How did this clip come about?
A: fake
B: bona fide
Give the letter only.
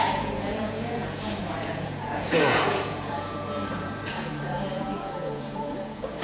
A